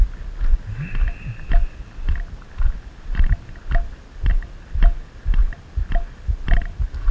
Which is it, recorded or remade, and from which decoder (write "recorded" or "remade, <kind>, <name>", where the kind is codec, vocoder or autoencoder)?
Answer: recorded